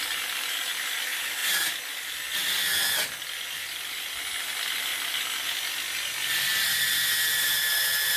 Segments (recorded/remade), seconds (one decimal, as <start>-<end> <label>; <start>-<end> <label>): 0.0-8.2 recorded